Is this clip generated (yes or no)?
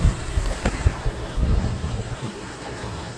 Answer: yes